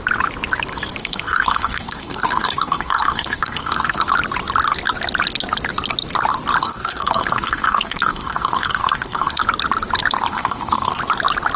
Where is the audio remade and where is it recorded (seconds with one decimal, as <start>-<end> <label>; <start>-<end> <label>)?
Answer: 0.0-1.0 recorded; 1.0-4.1 remade; 4.1-6.6 recorded; 6.6-9.4 remade; 9.4-10.3 recorded; 10.3-11.0 remade; 11.0-11.6 recorded